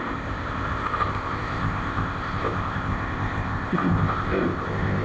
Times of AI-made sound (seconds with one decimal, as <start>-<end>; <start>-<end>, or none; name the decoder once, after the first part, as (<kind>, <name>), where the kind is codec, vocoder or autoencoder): 0.0-5.0 (codec, ZipCodec)